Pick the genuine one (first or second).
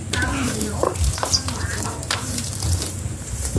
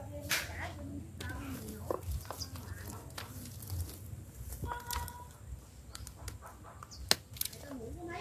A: second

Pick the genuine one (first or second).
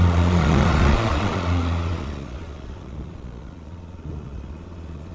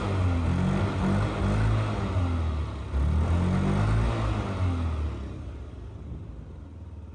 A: second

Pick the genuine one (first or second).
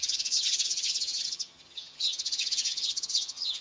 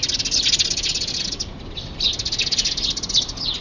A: second